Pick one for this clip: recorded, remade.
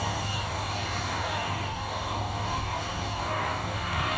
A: remade